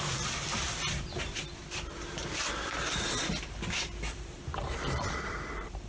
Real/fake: fake